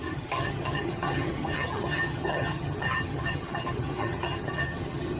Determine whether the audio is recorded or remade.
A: remade